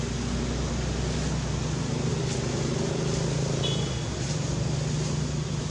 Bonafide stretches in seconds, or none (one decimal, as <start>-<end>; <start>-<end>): 0.0-5.7